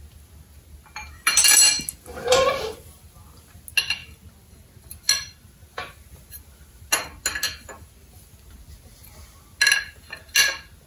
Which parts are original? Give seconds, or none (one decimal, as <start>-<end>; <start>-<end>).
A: 0.0-10.9